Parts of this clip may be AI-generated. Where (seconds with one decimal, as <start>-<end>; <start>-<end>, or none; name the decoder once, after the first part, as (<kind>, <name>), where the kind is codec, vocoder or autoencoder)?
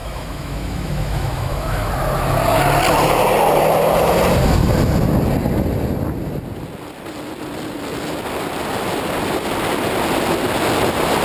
0.0-1.9 (autoencoder, DAC-VAE)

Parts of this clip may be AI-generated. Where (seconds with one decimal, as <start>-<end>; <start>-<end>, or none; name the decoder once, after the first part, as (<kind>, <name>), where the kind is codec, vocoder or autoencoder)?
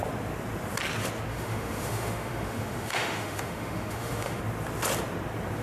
1.3-4.4 (autoencoder, DAC-VAE)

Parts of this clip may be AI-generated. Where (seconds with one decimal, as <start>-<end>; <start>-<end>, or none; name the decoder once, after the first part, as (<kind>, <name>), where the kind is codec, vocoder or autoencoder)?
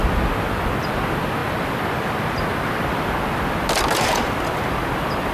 none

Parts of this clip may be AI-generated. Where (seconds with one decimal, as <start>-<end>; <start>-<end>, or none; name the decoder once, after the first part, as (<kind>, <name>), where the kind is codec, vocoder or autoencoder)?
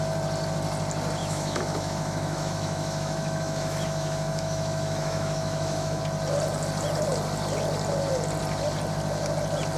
1.2-6.0 (autoencoder, DAC-VAE)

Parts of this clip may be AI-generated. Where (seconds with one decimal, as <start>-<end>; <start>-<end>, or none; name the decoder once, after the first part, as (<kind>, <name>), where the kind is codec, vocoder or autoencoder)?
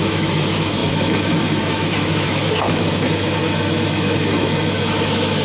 0.0-5.4 (autoencoder, DAC-VAE)